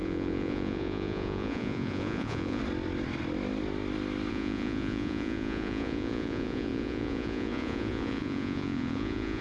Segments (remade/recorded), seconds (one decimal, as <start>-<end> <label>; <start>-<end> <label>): 0.0-2.6 remade; 2.6-4.3 recorded; 4.3-9.4 remade